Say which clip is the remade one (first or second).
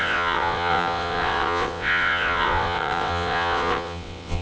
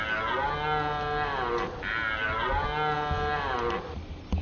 first